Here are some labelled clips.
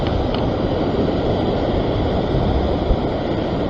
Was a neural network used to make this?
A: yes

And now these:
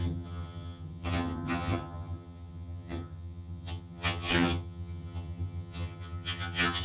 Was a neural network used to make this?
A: yes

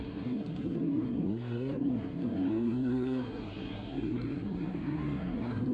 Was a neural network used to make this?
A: yes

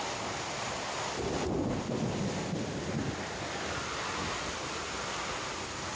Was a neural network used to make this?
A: no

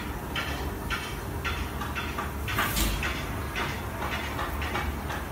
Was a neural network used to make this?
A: no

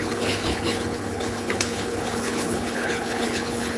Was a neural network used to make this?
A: yes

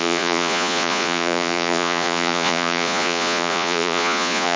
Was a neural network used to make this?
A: yes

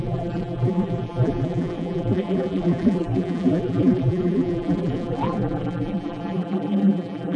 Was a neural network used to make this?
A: yes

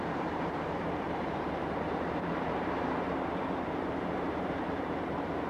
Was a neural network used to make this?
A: yes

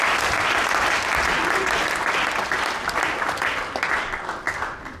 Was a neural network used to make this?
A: no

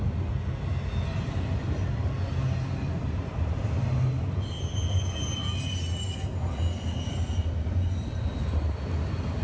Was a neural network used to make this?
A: no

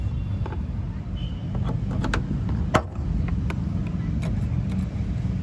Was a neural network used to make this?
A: no